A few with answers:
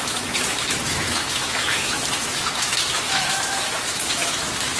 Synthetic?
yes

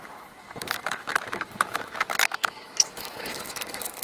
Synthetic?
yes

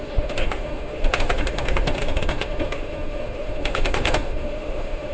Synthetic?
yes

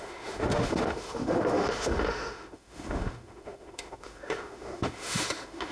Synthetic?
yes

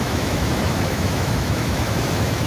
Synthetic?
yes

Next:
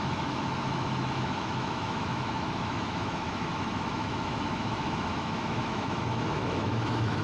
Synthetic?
yes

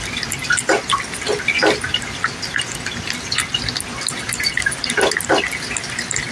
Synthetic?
no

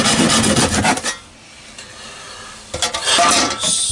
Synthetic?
no